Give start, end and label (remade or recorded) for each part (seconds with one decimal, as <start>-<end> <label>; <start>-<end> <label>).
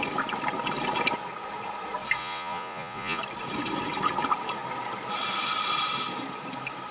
0.0-2.2 recorded; 2.2-3.2 remade; 3.2-6.9 recorded